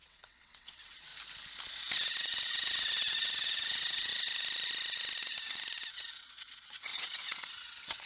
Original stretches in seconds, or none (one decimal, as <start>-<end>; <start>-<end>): 1.1-2.2; 4.1-5.9